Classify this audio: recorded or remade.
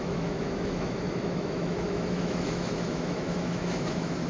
remade